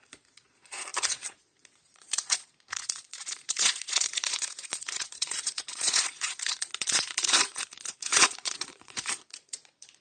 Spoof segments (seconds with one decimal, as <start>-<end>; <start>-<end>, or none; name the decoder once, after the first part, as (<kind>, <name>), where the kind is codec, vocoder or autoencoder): 0.0-10.0 (vocoder, Vocos)